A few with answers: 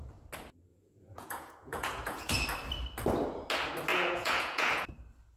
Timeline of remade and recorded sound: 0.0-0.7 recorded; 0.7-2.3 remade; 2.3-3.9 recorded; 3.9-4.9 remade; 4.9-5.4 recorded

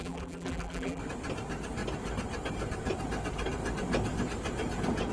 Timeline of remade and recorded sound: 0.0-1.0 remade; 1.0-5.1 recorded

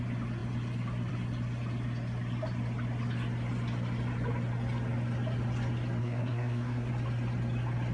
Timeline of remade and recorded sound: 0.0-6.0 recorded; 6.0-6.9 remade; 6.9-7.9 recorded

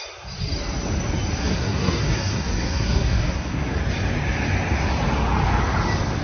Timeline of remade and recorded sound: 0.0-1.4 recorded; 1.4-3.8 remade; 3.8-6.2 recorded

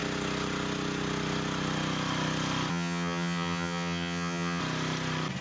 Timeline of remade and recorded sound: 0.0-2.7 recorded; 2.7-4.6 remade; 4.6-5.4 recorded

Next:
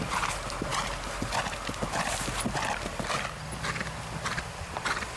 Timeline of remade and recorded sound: 0.0-5.2 recorded

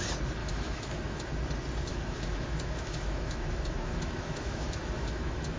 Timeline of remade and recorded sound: 0.0-0.4 recorded; 0.4-1.3 remade; 1.3-1.9 recorded; 1.9-5.6 remade